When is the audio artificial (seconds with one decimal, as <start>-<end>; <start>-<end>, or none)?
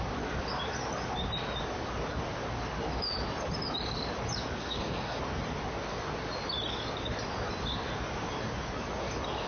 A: 4.6-5.2